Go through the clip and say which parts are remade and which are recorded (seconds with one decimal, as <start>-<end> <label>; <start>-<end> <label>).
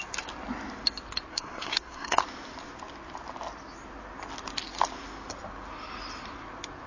0.0-1.3 recorded; 1.3-2.2 remade; 2.2-6.9 recorded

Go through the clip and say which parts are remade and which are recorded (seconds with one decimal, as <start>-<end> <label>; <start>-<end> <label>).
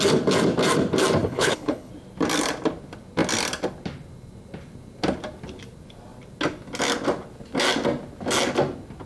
0.0-1.2 recorded; 1.2-1.9 remade; 1.9-9.1 recorded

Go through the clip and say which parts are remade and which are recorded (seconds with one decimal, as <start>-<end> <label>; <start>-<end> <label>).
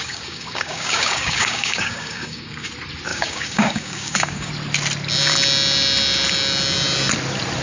0.0-2.7 remade; 2.7-3.1 recorded; 3.1-4.5 remade; 4.5-7.6 recorded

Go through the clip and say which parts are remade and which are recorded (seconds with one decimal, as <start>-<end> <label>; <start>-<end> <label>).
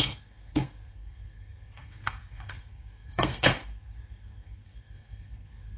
0.0-5.8 remade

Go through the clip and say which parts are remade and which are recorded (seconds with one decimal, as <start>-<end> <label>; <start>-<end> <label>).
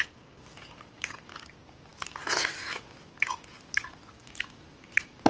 0.0-5.3 recorded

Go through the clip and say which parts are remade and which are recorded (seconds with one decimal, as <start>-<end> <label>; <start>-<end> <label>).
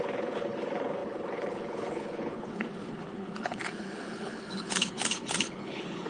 0.0-6.1 remade